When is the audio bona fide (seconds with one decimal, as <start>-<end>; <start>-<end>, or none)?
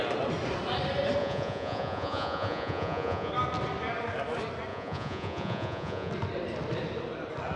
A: 0.0-1.2; 3.3-4.7; 6.1-7.6